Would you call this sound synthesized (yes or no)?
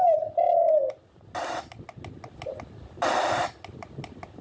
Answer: no